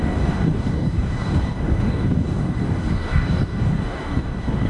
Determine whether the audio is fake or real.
fake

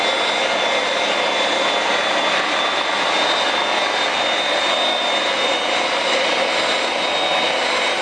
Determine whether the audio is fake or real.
real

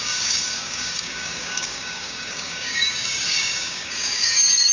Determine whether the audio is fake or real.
fake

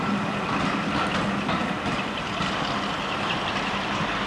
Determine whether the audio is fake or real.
real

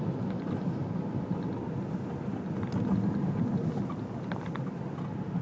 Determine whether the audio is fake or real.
real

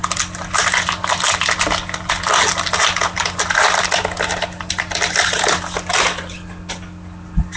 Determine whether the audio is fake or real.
real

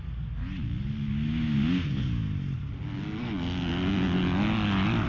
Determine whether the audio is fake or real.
real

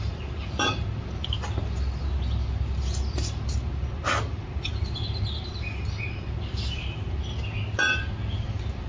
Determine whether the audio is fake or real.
real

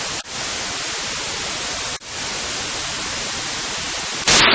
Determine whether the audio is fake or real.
real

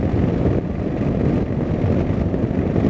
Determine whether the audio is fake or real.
real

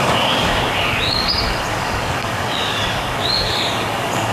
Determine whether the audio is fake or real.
fake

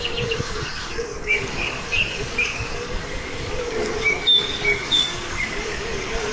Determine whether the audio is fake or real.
fake